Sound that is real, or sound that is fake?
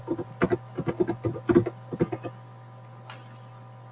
real